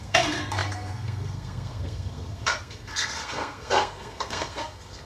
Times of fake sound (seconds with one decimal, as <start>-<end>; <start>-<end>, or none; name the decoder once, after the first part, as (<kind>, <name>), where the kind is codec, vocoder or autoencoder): 0.0-5.1 (codec, SNAC)